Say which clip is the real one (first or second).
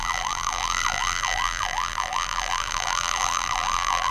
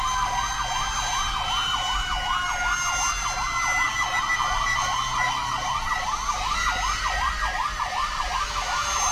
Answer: second